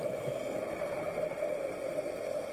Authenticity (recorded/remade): recorded